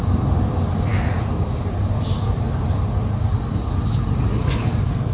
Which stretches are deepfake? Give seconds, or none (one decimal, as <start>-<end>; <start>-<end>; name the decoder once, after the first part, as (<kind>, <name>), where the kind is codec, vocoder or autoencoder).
none